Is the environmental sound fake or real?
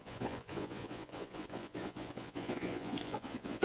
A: fake